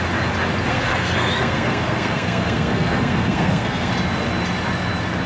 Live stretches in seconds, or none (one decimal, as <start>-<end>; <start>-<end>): 0.0-0.7; 3.9-5.3